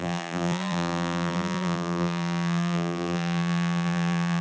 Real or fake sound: fake